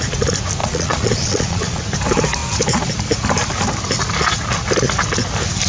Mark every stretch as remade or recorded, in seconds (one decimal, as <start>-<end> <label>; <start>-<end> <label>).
0.0-0.6 recorded; 0.6-1.8 remade; 1.8-5.7 recorded